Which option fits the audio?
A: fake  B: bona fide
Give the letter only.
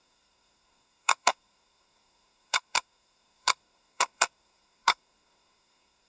A